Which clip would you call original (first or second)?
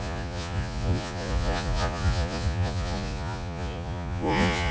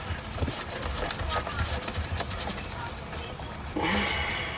second